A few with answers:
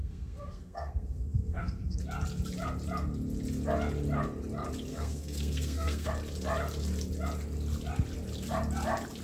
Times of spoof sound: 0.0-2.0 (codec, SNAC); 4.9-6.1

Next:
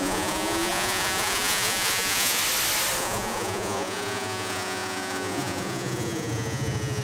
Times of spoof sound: 0.0-2.4 (vocoder, Vocos); 3.0-7.0